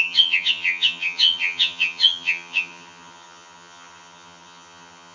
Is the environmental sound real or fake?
fake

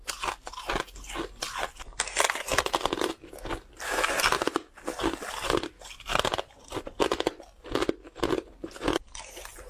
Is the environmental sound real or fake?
real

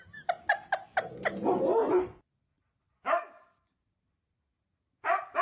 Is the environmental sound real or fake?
real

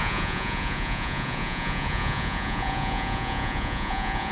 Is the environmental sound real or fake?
fake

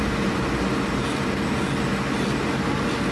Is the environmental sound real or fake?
real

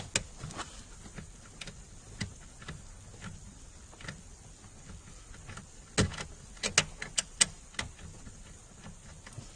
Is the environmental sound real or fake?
real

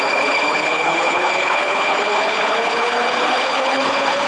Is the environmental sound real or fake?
fake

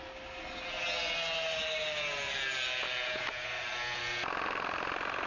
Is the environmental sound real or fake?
real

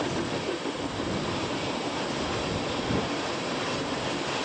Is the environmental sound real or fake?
real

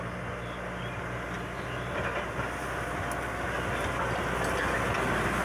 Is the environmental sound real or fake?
real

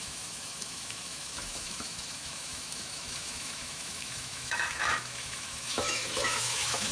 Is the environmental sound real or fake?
fake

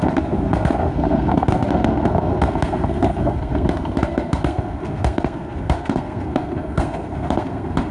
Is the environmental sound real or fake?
fake